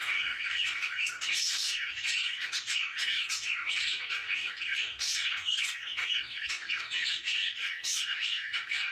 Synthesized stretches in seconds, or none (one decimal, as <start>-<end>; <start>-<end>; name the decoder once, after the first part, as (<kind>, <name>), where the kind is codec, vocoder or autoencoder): 0.0-8.9 (codec, DAC)